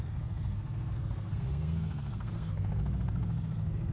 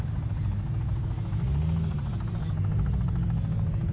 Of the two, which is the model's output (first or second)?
first